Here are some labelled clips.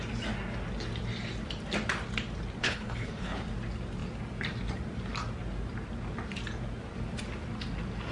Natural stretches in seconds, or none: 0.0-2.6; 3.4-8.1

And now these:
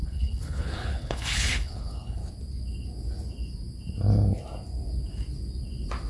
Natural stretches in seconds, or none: 2.2-6.1

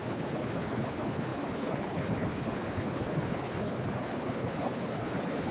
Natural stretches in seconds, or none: none

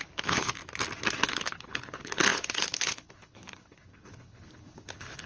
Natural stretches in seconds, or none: 0.6-1.3

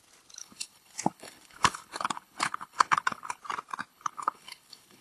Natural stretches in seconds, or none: 0.0-0.4; 3.4-3.9